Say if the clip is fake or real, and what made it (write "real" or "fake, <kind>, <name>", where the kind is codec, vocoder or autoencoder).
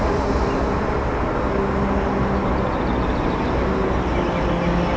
real